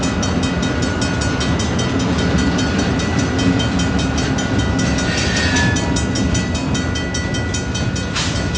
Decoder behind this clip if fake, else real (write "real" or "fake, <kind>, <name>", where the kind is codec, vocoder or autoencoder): real